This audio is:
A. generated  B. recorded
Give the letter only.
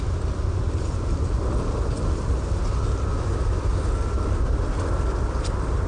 B